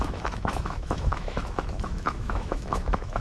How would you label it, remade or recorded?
remade